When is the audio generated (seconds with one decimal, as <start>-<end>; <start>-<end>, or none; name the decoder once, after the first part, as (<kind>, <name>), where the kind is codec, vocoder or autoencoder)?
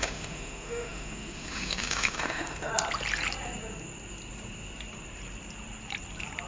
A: 0.0-2.7 (autoencoder, DAC-VAE)